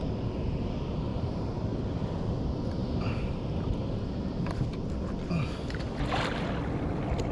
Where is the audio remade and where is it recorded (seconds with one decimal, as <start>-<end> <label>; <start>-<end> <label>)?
0.0-1.1 recorded; 1.1-1.6 remade; 1.6-2.8 recorded; 2.8-4.9 remade; 4.9-7.3 recorded